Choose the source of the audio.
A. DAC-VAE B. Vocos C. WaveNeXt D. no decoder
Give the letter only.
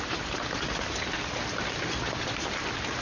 D